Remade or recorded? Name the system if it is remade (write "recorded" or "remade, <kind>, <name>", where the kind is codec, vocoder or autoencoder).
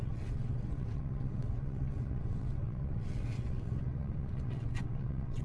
remade, vocoder, WaveNeXt